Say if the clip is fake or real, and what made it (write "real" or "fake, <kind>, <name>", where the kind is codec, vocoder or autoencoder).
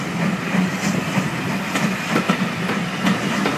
real